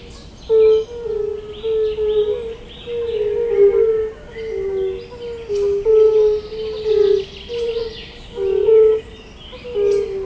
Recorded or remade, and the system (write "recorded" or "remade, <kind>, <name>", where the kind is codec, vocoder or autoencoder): recorded